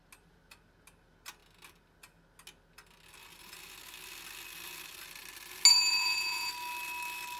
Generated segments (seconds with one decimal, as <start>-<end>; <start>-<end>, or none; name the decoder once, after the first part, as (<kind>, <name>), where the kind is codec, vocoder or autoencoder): 5.7-6.5 (vocoder, Vocos)